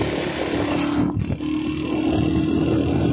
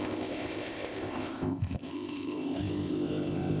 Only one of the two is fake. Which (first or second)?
second